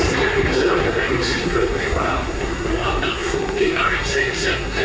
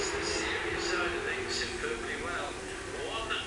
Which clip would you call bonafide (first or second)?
second